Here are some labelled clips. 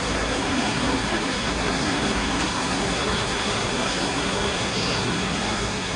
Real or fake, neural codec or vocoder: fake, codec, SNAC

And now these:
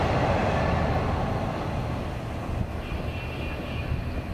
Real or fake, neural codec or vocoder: real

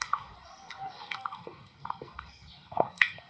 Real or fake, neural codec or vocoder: fake, codec, SNAC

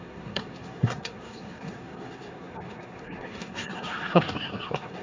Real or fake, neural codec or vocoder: fake, codec, SNAC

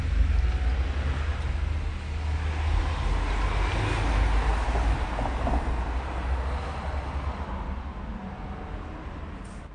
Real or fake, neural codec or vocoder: real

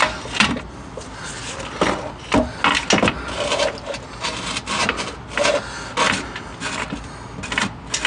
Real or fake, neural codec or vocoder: real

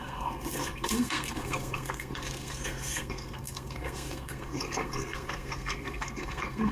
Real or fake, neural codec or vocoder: fake, codec, SNAC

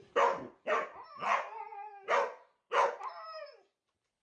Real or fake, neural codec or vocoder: real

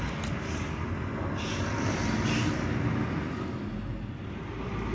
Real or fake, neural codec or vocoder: real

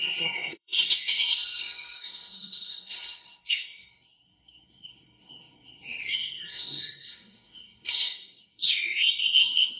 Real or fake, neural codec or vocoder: fake, codec, SNAC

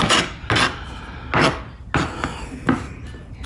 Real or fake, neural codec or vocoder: real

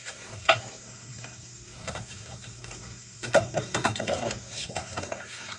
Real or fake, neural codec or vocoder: fake, codec, SNAC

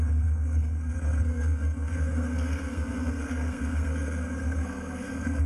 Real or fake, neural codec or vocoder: fake, codec, SNAC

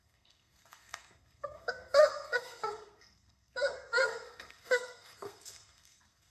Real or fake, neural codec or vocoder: fake, codec, SNAC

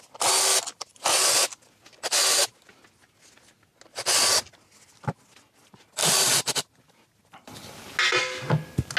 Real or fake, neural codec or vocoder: real